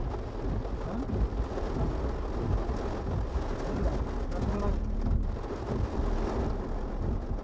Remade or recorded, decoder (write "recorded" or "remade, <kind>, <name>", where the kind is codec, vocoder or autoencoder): recorded